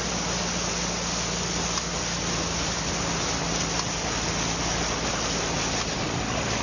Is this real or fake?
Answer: real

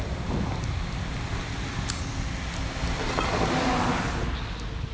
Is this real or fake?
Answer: real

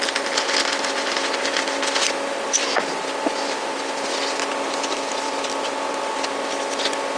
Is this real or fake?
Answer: real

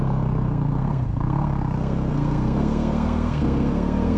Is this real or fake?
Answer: fake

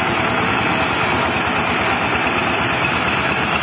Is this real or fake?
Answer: real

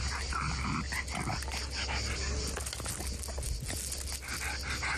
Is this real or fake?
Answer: real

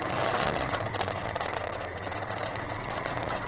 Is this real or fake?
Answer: fake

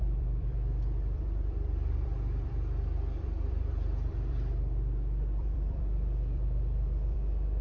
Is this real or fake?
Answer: fake